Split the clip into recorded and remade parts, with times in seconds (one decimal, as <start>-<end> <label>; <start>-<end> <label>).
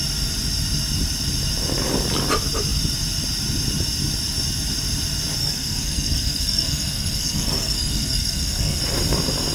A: 0.0-5.4 recorded; 5.4-8.8 remade; 8.8-9.5 recorded